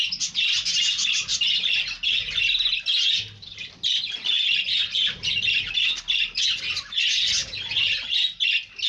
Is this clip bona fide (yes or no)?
yes